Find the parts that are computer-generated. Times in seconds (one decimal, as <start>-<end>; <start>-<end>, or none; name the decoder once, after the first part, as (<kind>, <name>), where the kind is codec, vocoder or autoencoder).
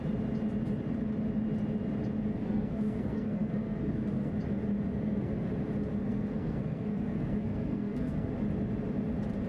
2.3-4.3 (codec, SNAC); 4.9-5.5; 6.0-8.3